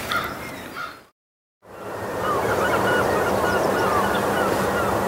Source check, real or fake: fake